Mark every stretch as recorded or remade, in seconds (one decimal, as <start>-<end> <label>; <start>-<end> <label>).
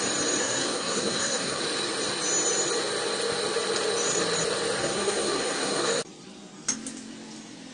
0.0-0.4 recorded; 0.4-1.6 remade; 1.6-4.8 recorded; 4.8-6.0 remade; 6.0-7.7 recorded